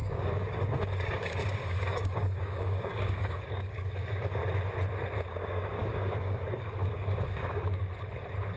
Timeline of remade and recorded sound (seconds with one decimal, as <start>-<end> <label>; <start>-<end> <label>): 0.0-4.4 remade; 4.4-5.3 recorded; 5.3-7.8 remade; 7.8-8.6 recorded